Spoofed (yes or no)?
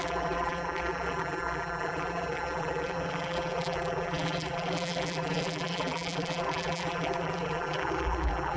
yes